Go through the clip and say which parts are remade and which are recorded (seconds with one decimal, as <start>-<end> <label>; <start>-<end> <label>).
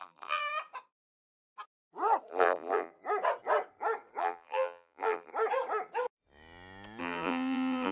0.0-0.4 remade; 0.4-2.3 recorded; 2.3-2.9 remade; 2.9-4.2 recorded; 4.2-5.3 remade; 5.3-7.0 recorded; 7.0-7.9 remade